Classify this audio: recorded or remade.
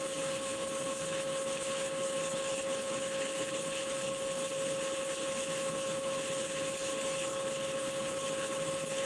remade